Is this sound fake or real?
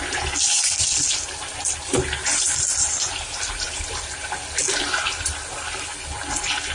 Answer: real